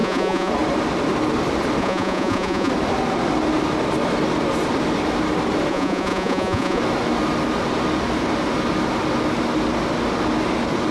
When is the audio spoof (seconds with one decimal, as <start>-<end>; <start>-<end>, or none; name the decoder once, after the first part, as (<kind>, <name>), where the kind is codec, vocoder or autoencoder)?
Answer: 0.0-0.5 (vocoder, Vocos); 1.8-2.7; 5.7-6.8